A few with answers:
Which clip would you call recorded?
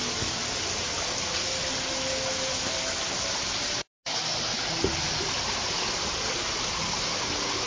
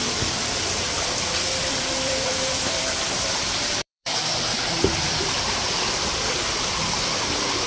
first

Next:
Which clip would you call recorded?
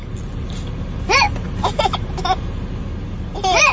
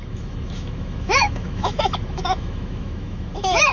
first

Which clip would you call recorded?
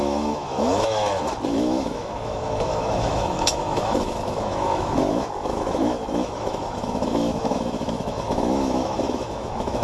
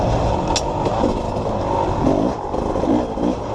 second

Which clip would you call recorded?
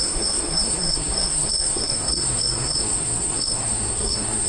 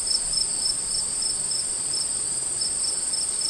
second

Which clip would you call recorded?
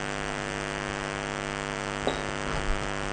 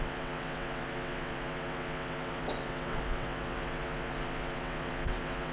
first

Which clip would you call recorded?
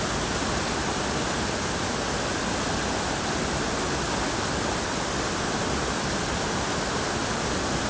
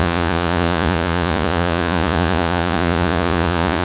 first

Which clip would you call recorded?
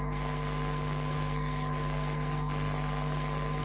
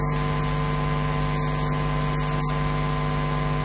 second